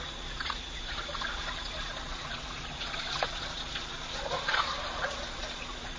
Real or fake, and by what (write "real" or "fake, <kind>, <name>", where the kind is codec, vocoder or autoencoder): fake, vocoder, Vocos